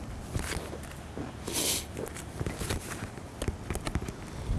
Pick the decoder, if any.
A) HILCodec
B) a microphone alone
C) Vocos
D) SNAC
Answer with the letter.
B